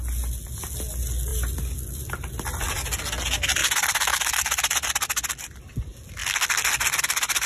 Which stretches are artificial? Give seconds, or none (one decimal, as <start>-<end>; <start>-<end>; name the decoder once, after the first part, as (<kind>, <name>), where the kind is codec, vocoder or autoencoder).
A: 3.6-5.6 (vocoder, BigVGAN v2)